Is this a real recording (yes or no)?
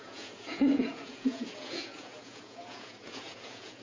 no